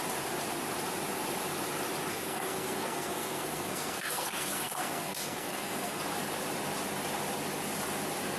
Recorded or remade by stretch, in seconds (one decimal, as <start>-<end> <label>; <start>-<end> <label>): 0.0-2.1 recorded; 2.1-6.0 remade; 6.0-8.4 recorded